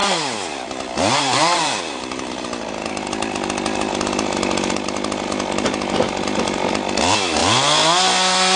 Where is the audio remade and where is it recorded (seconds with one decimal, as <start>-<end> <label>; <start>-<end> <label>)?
0.0-2.9 remade; 2.9-8.6 recorded